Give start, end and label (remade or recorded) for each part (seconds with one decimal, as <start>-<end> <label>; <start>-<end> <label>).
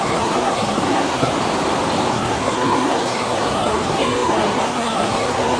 0.0-1.3 remade; 1.3-2.1 recorded; 2.1-5.6 remade